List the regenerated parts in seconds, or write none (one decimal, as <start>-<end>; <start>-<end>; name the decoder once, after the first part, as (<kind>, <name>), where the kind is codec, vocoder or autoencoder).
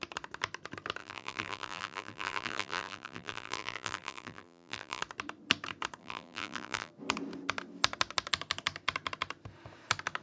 1.0-5.0 (vocoder, BigVGAN v2); 6.0-6.9